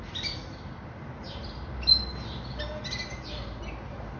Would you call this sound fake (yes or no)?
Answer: no